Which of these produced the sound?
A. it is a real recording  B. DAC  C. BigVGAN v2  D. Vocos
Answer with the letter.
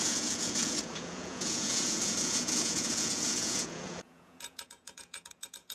D